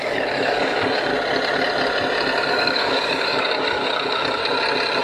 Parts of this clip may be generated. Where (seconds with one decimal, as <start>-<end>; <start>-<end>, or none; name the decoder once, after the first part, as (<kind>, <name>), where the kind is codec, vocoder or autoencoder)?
0.0-1.1 (codec, DAC); 2.5-4.4